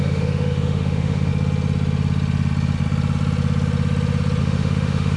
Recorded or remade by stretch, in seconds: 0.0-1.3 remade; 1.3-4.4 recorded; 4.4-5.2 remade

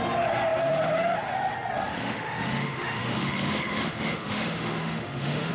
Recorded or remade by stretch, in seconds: 0.0-2.0 recorded; 2.0-5.5 remade

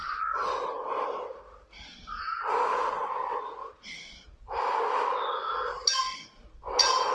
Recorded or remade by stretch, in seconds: 0.0-7.1 recorded